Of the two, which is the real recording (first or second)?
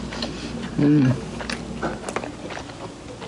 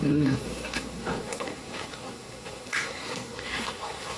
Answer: first